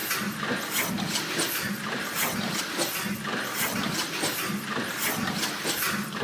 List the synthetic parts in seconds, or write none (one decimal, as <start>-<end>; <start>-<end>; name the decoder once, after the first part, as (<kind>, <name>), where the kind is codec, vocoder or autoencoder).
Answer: none